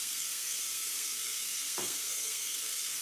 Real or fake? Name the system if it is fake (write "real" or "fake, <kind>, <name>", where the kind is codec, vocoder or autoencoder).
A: fake, codec, SNAC